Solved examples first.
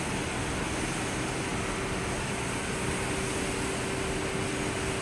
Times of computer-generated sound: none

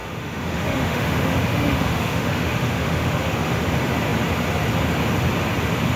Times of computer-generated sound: 0.0-3.6

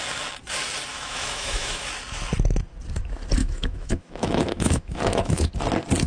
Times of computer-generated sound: 0.9-1.9; 3.4-5.5

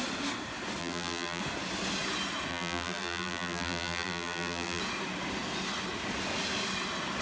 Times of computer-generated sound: 0.8-1.4; 2.5-4.8

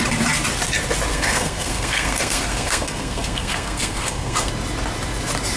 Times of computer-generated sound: 1.1-4.5

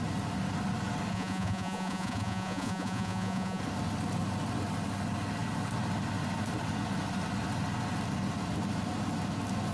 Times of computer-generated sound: 1.1-3.6